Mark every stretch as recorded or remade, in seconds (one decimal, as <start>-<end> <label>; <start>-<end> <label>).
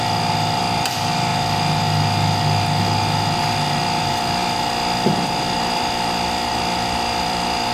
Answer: 0.0-1.3 remade; 1.3-2.8 recorded; 2.8-4.4 remade; 4.4-5.1 recorded; 5.1-7.7 remade